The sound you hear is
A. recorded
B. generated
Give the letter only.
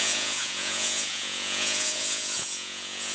B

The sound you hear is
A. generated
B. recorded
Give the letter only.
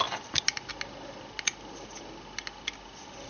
B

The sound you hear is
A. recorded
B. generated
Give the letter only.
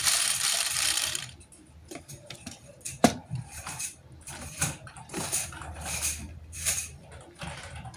B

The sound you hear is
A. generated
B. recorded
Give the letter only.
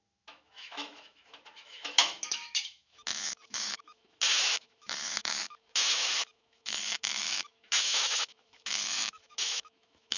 A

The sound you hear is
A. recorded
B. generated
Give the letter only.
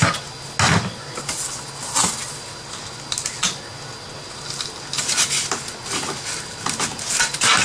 A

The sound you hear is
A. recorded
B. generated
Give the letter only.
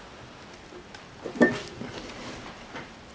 A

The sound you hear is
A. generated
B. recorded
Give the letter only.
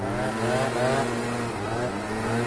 B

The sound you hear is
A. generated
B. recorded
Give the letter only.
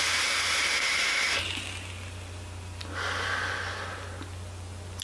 B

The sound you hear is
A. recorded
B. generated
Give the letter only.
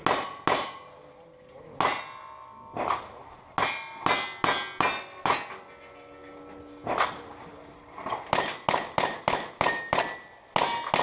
A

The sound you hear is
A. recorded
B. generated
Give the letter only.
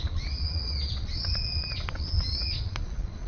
B